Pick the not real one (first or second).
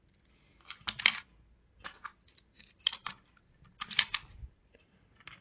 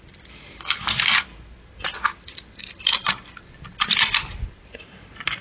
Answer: second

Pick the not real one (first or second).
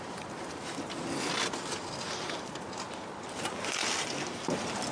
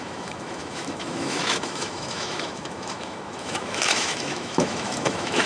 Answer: second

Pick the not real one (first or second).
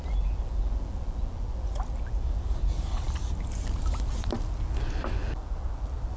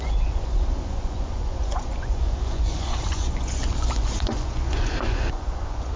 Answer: second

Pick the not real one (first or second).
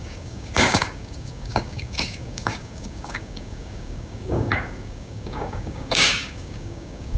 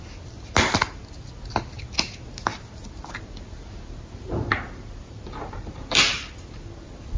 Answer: first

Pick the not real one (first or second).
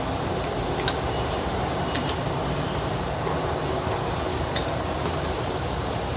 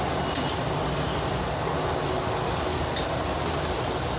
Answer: first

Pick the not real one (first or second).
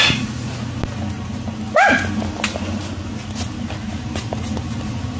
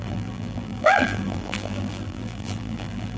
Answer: second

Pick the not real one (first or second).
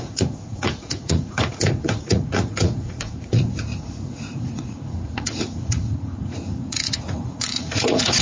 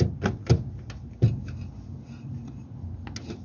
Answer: first